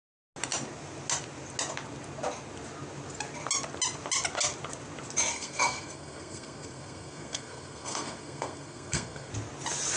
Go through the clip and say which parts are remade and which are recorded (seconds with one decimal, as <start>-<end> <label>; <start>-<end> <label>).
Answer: 0.0-5.3 recorded; 5.3-9.3 remade; 9.3-10.0 recorded